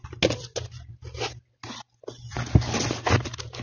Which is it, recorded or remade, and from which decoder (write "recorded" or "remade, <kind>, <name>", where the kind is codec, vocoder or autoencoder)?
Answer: recorded